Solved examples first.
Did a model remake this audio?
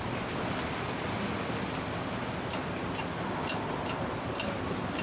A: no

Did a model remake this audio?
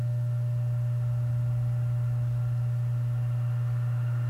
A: no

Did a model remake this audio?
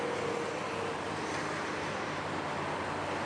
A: no